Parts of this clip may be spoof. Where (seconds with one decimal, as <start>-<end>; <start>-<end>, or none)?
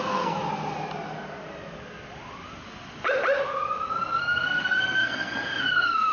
0.0-0.4; 4.1-6.1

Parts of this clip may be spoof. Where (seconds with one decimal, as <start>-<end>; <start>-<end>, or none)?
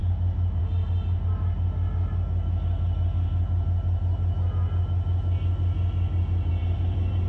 none